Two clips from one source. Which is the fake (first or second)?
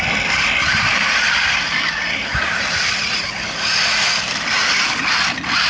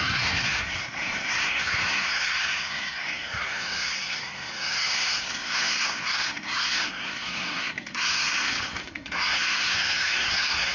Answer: second